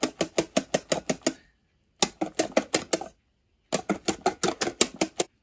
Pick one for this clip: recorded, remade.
recorded